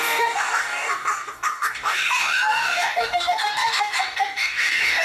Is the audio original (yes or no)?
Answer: no